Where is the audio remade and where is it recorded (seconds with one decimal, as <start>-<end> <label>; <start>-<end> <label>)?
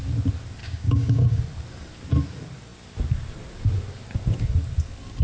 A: 0.0-0.6 recorded; 0.6-1.4 remade; 1.4-5.2 recorded